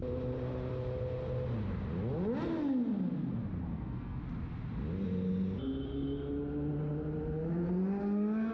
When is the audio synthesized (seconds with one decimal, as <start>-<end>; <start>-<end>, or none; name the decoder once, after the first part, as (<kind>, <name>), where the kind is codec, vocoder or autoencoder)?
3.7-4.2 (codec, SNAC)

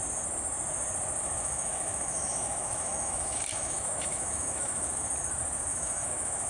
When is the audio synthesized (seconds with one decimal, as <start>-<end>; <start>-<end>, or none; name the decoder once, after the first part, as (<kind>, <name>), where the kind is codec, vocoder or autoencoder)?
1.2-5.1 (autoencoder, DAC-VAE); 5.7-6.5

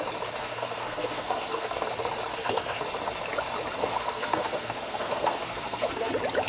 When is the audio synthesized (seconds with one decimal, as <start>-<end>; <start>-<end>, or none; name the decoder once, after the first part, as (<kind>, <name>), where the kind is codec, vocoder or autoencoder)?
0.4-1.8 (codec, SNAC); 2.3-2.8; 3.8-6.1

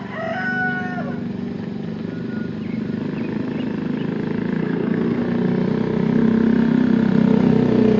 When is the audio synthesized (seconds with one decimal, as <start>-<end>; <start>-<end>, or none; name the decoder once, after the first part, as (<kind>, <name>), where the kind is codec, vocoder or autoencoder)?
4.6-5.2 (codec, SNAC)

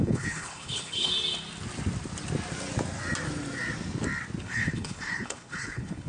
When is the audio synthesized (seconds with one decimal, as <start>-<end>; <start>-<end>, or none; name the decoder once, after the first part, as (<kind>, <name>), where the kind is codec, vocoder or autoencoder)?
0.0-1.1 (codec, HILCodec); 4.4-6.1